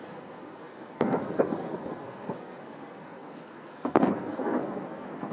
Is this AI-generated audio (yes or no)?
yes